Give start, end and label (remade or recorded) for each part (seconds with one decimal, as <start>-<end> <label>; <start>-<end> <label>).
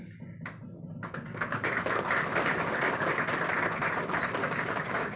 0.0-1.3 recorded; 1.3-1.8 remade; 1.8-2.3 recorded; 2.3-3.1 remade; 3.1-4.4 recorded; 4.4-5.2 remade